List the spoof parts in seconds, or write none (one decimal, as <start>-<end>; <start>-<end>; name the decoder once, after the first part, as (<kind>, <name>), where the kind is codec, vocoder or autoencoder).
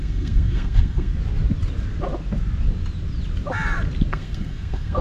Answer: 0.0-1.1 (codec, SNAC); 4.1-5.0